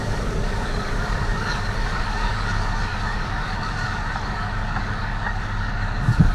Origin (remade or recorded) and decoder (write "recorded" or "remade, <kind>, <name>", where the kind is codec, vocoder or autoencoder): remade, codec, DAC